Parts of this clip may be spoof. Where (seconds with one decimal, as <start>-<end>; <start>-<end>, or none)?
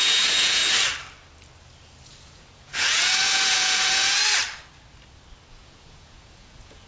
0.0-0.6; 2.2-4.2; 5.5-6.9